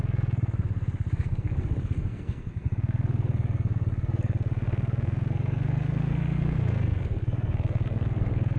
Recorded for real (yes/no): no